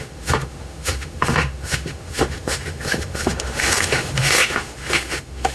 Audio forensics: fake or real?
fake